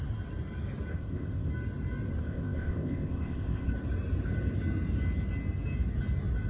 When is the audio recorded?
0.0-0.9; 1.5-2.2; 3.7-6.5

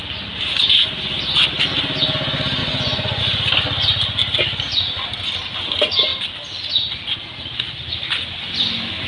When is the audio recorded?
0.0-2.6; 3.2-9.1

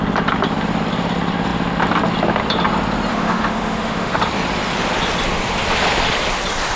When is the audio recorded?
0.0-3.1; 4.2-6.8